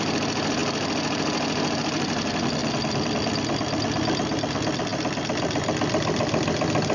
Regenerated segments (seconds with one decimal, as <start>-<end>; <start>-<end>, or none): none